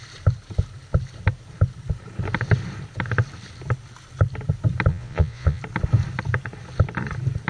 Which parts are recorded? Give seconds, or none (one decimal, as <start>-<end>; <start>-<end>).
0.0-4.9; 5.6-7.5